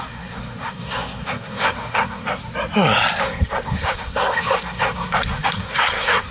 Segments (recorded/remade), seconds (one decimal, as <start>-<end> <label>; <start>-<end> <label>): 0.0-2.4 remade; 2.4-3.2 recorded; 3.2-6.3 remade